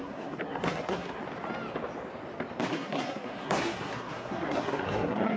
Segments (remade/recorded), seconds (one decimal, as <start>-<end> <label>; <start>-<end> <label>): 0.0-1.2 remade; 1.2-2.7 recorded; 2.7-5.4 remade

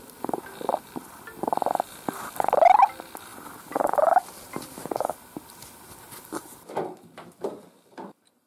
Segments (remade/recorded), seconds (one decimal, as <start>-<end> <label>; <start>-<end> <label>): 0.0-8.5 recorded

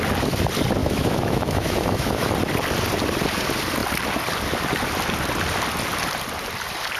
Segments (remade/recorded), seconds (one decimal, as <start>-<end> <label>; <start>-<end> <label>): 0.0-0.8 recorded; 0.8-2.3 remade; 2.3-7.0 recorded